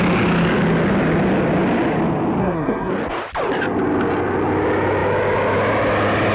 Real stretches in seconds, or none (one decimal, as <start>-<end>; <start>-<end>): 0.0-2.4; 2.9-6.3